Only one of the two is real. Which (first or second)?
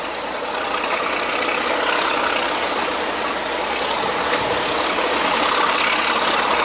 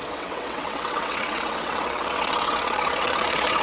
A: first